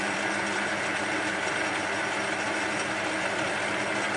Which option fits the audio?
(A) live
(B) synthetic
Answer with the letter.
A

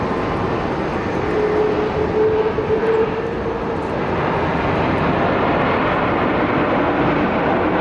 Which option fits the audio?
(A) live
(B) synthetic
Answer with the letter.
A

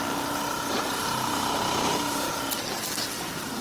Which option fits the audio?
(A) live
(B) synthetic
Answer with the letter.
A